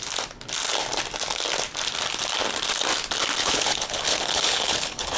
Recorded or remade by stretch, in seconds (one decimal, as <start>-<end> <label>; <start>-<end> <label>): 0.0-3.4 recorded; 3.4-5.2 remade